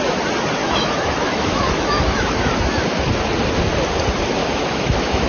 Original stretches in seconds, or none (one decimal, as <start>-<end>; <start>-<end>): 0.0-0.6; 2.5-4.4